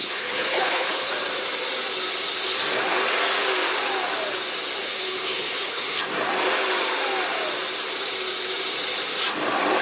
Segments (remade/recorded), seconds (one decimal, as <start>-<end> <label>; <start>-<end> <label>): 0.0-1.1 remade; 1.1-4.8 recorded; 4.8-6.0 remade; 6.0-9.8 recorded